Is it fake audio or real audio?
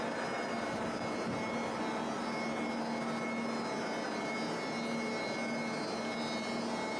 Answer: real